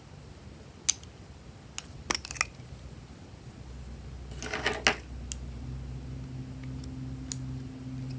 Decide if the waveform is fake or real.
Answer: real